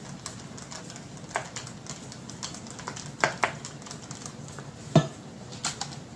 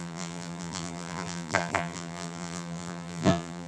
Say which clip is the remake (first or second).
second